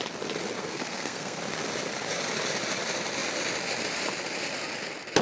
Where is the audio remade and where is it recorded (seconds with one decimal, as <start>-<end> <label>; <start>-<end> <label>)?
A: 0.0-0.6 recorded; 0.6-1.4 remade; 1.4-5.2 recorded